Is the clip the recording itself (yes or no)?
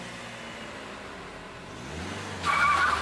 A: yes